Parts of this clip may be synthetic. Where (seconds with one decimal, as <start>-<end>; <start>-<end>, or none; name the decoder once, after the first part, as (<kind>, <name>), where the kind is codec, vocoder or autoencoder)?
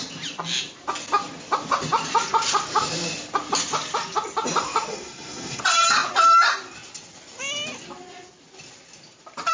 4.9-5.6 (codec, SNAC)